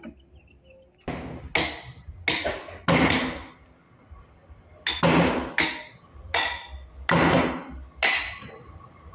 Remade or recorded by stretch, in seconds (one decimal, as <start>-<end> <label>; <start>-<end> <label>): 0.0-9.1 recorded